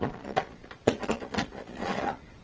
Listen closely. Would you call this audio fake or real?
fake